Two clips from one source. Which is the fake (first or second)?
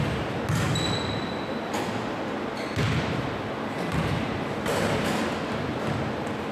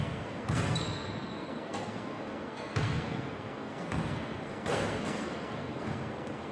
second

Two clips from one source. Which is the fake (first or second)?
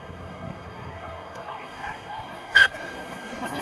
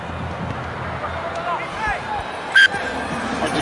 first